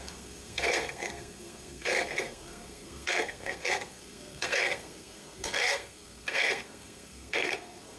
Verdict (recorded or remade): remade